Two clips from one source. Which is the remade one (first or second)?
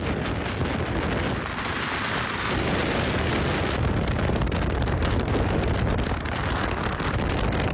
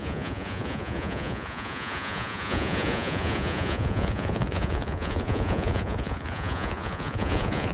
second